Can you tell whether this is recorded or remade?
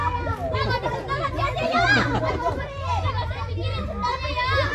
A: recorded